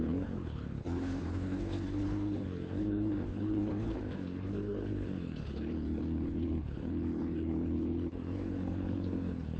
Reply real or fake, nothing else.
fake